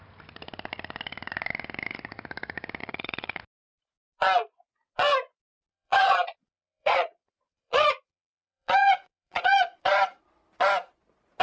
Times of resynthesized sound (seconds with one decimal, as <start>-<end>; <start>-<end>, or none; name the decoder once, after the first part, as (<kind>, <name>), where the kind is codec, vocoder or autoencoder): 2.8-3.4 (vocoder, Vocos); 5.7-10.2